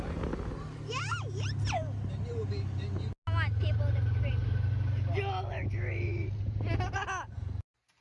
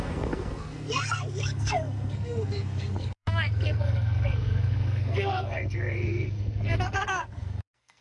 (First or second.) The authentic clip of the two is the first